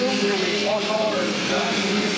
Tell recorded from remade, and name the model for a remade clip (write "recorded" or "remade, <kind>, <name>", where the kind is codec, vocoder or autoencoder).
remade, codec, SNAC